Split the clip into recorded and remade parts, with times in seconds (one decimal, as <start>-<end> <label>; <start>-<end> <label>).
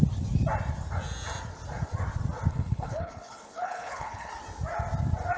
0.0-2.5 recorded; 2.5-4.3 remade; 4.3-5.4 recorded